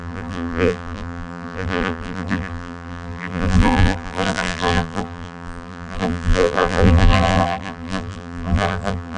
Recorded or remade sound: remade